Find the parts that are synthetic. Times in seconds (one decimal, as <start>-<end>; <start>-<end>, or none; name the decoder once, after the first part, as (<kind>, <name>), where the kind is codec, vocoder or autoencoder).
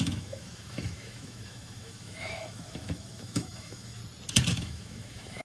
0.0-4.0 (autoencoder, DAC-VAE); 4.5-5.4